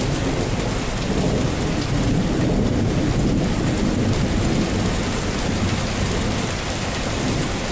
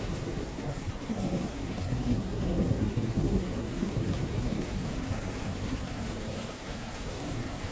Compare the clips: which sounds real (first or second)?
first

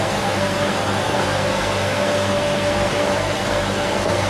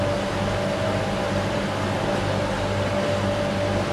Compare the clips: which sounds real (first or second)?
second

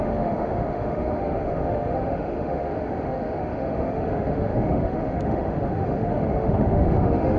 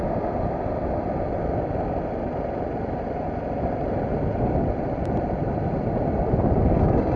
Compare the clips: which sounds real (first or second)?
second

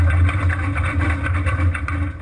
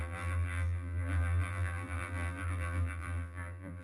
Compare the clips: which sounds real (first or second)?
first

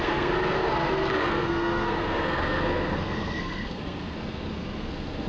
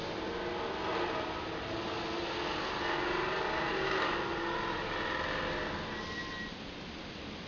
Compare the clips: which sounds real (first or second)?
second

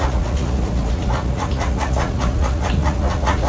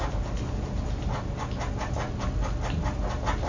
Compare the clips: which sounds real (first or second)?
second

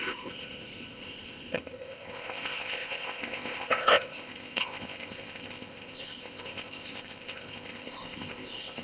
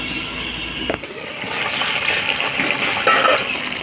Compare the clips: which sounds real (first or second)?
second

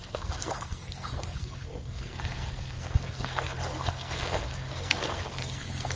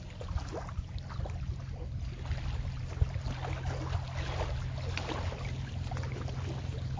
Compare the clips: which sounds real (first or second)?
second